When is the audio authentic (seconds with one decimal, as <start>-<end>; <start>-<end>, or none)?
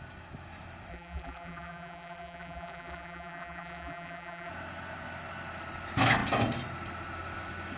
0.0-0.9; 4.5-7.8